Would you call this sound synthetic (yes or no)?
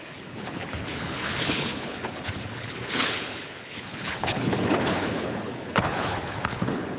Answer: yes